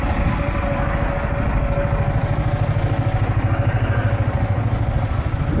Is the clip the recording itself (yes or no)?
yes